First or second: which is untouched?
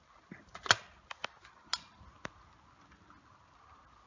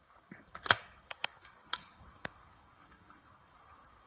first